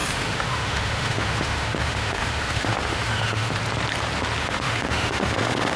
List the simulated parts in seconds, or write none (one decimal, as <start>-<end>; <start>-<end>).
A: 0.0-3.5; 4.4-5.8